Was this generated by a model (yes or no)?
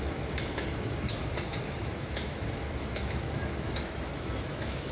yes